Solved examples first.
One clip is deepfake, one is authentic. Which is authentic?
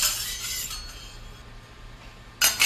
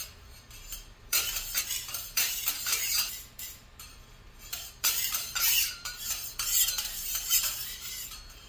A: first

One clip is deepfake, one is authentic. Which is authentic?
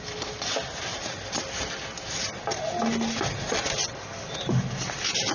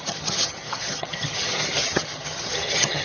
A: first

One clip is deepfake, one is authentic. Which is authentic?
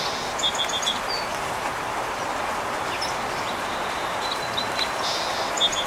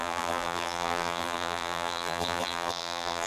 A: first